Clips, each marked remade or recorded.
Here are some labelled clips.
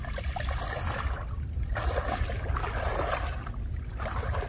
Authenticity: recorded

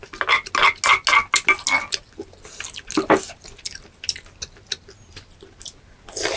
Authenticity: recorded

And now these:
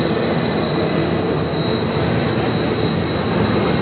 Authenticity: recorded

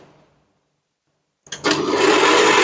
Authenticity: recorded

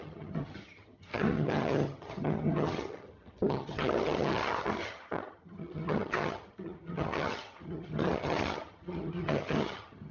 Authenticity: remade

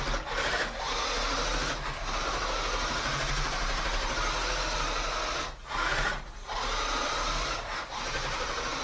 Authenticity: recorded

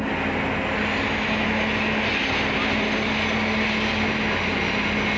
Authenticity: recorded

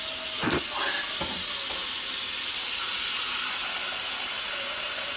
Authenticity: recorded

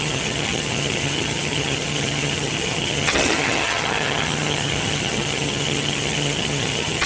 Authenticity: remade